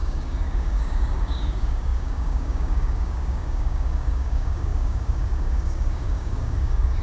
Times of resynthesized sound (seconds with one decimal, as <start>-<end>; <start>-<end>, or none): 0.0-7.0